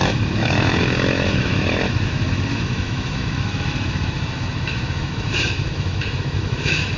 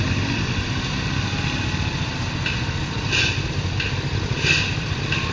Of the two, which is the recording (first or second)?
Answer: second